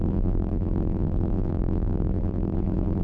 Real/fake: fake